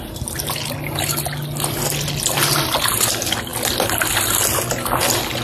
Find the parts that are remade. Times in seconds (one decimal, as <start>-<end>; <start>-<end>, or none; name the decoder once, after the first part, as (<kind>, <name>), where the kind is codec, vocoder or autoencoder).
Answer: none